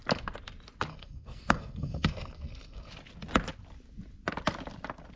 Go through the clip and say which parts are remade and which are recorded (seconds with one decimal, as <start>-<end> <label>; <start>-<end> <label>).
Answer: 0.0-0.9 recorded; 0.9-2.9 remade; 2.9-5.2 recorded